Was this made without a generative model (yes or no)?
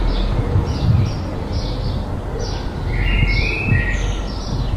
yes